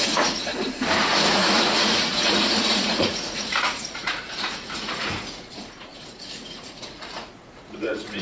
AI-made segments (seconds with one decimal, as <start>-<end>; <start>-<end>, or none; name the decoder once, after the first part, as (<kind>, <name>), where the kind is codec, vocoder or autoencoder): 0.0-0.5 (vocoder, Vocos); 1.3-8.2